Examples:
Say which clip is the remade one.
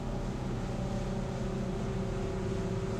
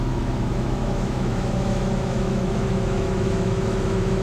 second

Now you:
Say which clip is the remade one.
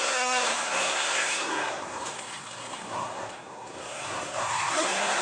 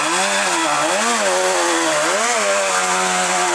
first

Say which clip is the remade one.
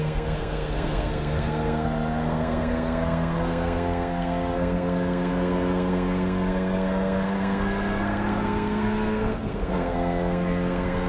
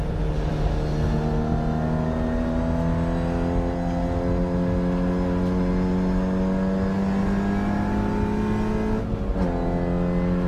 first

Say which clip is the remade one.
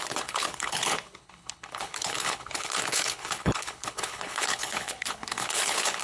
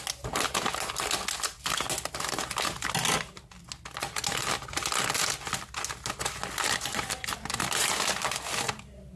first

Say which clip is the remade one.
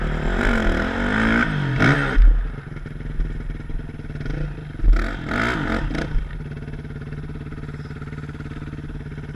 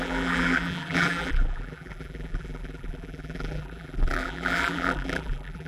second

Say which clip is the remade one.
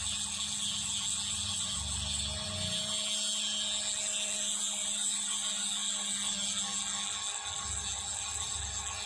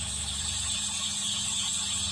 second